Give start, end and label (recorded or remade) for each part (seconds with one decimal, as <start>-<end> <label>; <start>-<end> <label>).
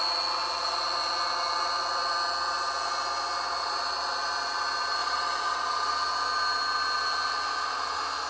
0.0-5.0 recorded; 5.0-5.6 remade; 5.6-8.3 recorded